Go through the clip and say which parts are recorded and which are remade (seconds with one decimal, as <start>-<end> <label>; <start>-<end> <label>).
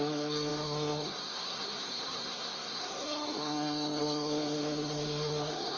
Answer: 0.0-5.8 remade